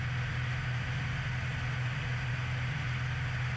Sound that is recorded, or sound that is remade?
recorded